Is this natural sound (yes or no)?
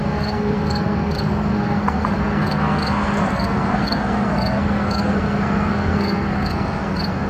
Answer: no